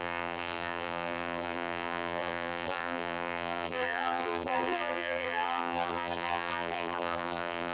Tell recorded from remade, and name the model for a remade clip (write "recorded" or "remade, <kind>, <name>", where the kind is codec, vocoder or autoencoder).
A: remade, vocoder, BigVGAN v2